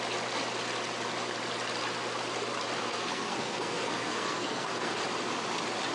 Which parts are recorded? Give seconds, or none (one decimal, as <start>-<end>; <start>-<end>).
0.0-2.8; 5.0-5.9